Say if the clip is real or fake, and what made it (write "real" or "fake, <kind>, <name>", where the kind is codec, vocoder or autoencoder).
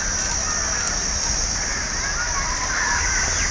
real